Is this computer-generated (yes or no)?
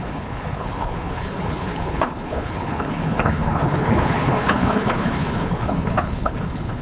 yes